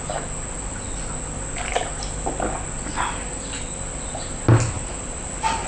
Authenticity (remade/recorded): recorded